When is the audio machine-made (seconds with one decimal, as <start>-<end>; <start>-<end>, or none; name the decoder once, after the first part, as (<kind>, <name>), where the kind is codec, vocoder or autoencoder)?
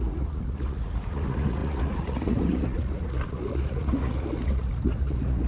0.0-5.5 (vocoder, Vocos)